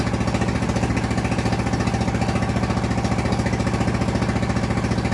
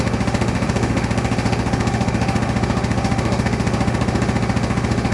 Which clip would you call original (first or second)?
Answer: first